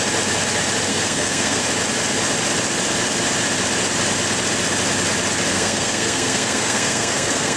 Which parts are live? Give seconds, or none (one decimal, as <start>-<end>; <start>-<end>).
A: 0.0-0.9; 1.6-5.5